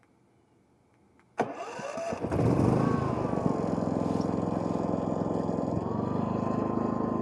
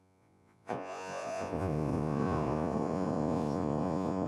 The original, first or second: first